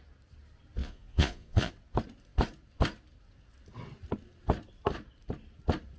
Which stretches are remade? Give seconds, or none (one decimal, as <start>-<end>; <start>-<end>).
0.8-1.7